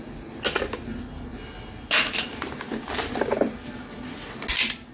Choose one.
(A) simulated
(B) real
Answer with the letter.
B